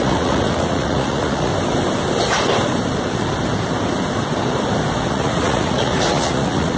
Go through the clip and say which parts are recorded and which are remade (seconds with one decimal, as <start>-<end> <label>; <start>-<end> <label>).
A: 0.0-1.5 remade; 1.5-5.1 recorded; 5.1-6.8 remade